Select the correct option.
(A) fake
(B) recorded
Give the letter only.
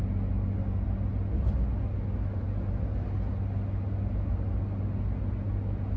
B